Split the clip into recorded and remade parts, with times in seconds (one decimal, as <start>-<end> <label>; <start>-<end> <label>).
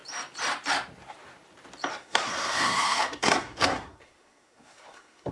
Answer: 0.0-1.9 recorded; 1.9-5.3 remade